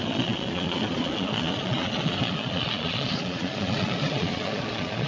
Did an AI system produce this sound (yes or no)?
yes